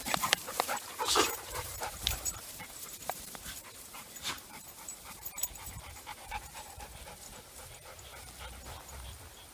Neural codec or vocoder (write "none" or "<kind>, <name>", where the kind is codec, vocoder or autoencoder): vocoder, BigVGAN v2